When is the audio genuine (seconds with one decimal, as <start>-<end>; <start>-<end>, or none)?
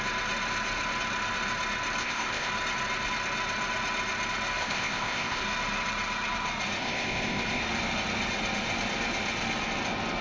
0.0-2.0; 2.5-4.6; 5.4-6.8; 7.6-10.2